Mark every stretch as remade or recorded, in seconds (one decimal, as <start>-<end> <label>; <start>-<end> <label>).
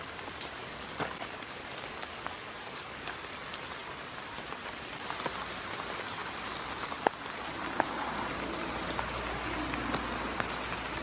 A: 0.0-0.6 recorded; 0.6-3.3 remade; 3.3-11.0 recorded